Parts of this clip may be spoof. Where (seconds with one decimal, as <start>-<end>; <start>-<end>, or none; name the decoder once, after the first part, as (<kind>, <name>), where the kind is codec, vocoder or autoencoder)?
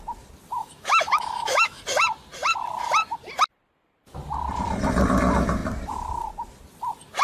0.6-1.8 (autoencoder, DAC-VAE)